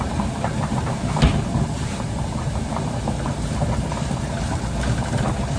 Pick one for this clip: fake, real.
real